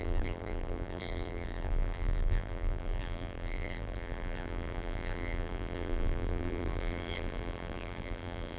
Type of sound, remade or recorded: remade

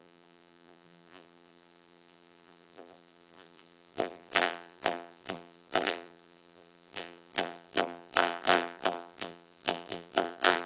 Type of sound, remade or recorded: remade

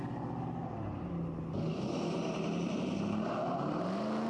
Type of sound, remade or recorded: recorded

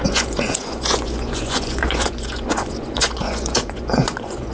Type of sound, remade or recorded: remade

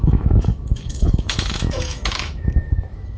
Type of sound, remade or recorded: remade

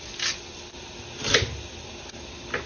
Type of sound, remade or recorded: recorded